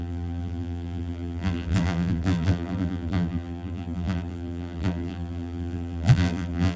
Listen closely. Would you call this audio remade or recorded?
remade